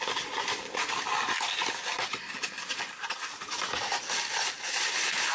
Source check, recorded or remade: remade